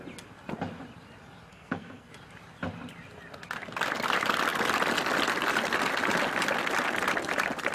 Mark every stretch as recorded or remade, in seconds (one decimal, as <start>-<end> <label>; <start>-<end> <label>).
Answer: 0.0-1.5 recorded; 1.5-2.1 remade; 2.1-7.7 recorded